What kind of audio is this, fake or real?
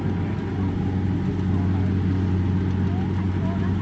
real